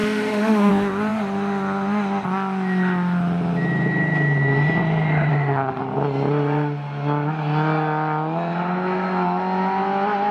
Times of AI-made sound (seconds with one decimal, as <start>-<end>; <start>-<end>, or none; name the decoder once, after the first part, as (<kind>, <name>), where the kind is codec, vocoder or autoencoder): 0.0-0.7 (autoencoder, DAC-VAE); 5.3-5.8